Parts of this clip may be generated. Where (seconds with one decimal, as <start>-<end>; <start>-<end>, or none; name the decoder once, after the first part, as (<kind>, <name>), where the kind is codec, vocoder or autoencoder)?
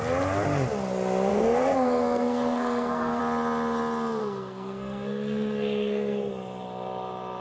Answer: 1.3-3.2 (codec, SNAC); 4.2-6.3